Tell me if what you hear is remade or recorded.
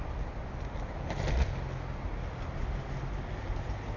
recorded